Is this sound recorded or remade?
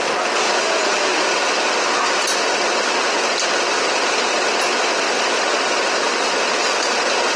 recorded